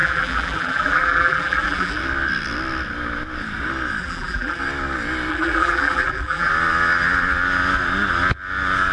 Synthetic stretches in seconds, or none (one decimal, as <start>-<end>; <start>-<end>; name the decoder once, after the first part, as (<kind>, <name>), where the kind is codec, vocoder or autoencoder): 0.0-2.0 (vocoder, BigVGAN v2); 4.0-4.6; 5.3-6.5